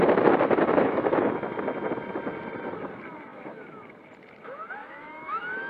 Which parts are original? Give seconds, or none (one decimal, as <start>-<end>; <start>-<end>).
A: 0.0-0.7; 1.3-3.3; 3.9-4.8